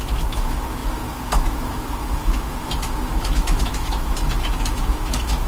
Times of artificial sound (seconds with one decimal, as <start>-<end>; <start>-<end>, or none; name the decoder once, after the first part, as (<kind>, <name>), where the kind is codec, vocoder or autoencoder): 0.0-5.5 (autoencoder, DAC-VAE)